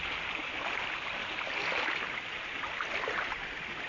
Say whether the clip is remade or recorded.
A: recorded